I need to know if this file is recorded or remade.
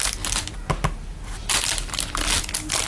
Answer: recorded